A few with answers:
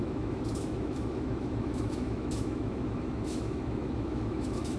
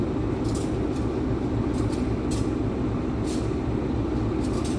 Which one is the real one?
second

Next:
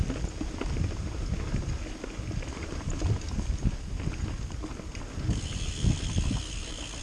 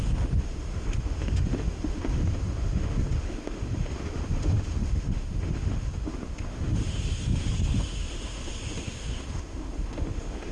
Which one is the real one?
first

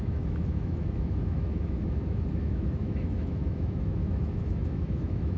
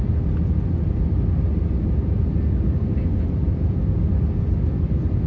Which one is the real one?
second